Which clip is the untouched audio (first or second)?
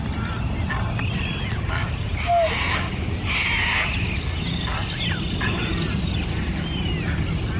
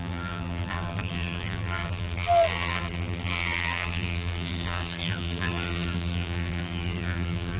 first